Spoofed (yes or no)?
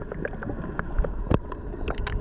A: no